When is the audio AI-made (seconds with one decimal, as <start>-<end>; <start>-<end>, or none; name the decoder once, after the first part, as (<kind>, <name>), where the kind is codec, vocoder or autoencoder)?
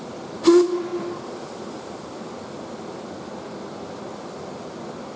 none